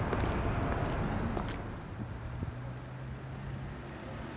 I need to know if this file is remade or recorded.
recorded